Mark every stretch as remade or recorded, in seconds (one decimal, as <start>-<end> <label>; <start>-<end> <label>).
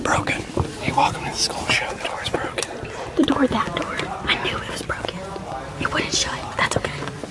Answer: 0.0-7.3 recorded